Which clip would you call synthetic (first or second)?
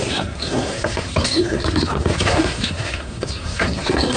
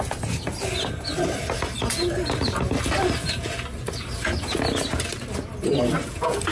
first